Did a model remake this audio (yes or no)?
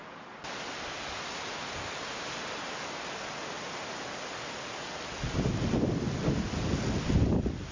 no